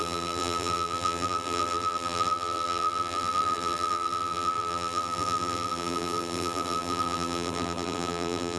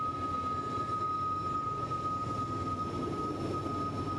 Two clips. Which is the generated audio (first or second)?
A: first